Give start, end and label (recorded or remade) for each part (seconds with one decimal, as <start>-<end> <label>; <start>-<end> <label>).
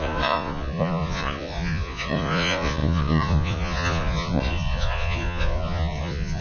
0.0-6.4 remade